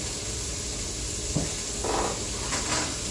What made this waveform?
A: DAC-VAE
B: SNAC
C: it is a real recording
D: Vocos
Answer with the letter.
C